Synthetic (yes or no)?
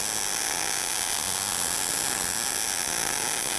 no